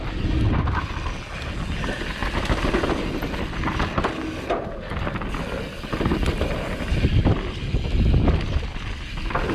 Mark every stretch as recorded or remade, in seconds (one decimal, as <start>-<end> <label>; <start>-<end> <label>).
0.0-9.5 recorded